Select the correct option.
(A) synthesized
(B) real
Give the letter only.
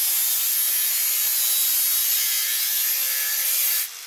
B